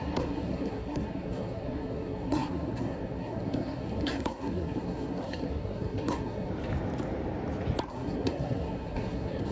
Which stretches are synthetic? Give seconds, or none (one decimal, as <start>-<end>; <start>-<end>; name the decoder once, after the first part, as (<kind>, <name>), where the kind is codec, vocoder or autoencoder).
0.0-6.5 (codec, SNAC); 7.9-9.5